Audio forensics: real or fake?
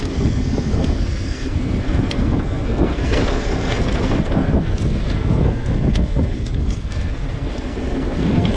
fake